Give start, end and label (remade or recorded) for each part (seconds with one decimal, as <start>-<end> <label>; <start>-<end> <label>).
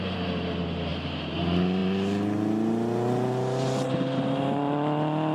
0.0-5.3 recorded